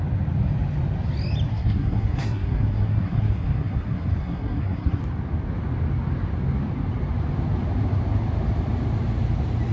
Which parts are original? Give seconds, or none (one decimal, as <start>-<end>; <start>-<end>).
0.0-1.5; 5.0-9.7